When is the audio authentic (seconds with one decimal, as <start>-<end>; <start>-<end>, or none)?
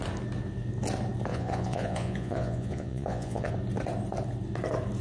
0.0-1.3; 3.5-5.0